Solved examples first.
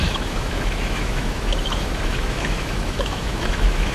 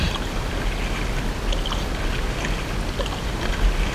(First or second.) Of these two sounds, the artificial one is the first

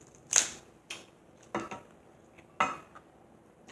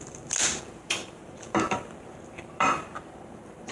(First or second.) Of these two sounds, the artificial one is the second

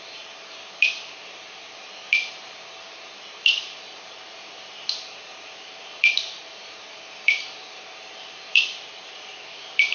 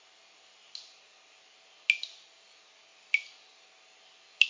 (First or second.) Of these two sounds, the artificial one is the first